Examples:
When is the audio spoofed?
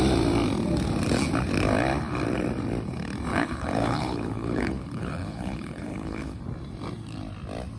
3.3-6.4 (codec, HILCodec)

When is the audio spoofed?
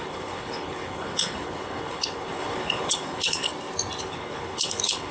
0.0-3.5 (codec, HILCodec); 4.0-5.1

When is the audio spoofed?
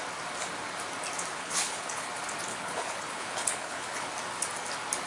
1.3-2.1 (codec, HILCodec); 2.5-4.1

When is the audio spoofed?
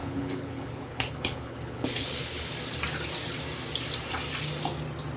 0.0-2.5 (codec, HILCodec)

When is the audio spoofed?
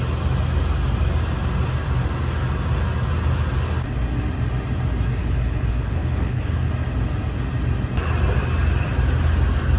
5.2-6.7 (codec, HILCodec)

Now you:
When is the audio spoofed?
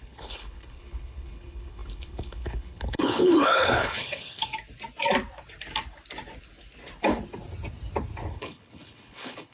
0.0-4.5 (codec, HILCodec); 8.3-9.5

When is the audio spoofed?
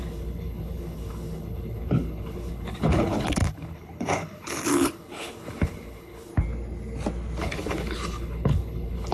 0.0-6.3 (codec, HILCodec); 7.4-9.1